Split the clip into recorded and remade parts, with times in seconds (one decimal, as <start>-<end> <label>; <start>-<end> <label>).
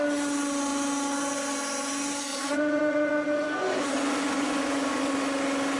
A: 0.0-2.3 recorded; 2.3-5.1 remade; 5.1-5.8 recorded